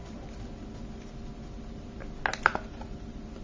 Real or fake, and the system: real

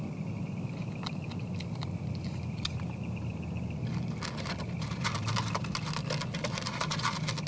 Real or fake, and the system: real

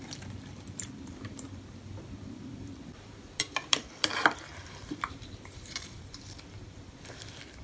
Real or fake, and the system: fake, vocoder, BigVGAN v2